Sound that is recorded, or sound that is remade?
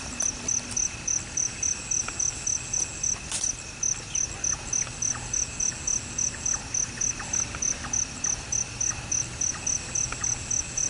recorded